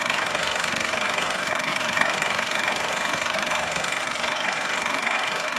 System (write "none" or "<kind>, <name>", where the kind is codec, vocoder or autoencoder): codec, SNAC